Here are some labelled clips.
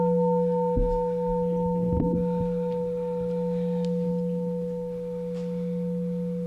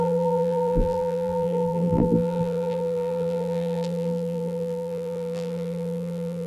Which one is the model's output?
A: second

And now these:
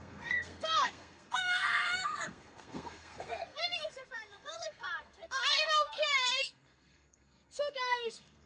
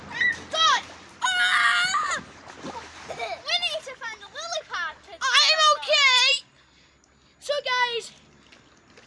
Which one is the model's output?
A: first